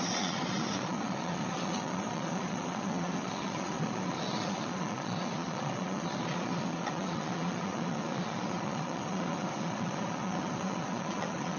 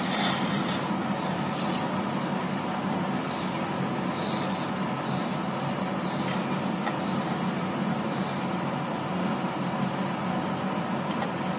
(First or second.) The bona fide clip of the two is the second